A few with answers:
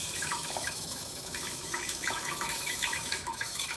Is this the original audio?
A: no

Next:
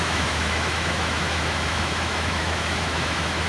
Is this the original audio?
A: no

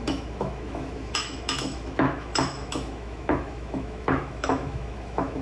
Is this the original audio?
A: no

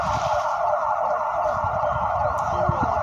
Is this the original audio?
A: yes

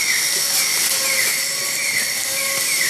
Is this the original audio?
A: yes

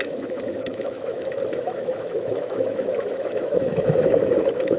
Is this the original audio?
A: no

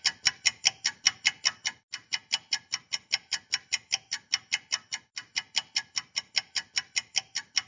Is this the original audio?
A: yes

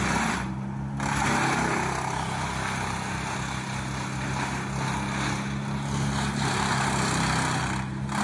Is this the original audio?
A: yes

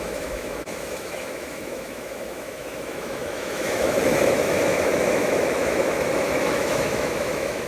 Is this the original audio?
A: no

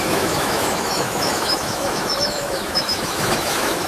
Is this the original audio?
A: no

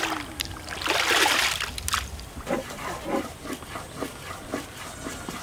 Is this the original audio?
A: yes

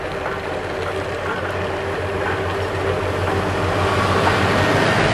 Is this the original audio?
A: yes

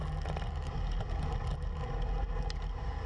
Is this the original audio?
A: yes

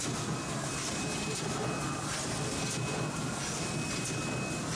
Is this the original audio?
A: yes